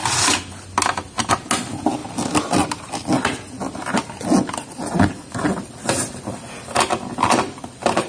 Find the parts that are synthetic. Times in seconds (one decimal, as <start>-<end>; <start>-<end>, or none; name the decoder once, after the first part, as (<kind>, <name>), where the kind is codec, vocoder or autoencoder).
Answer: none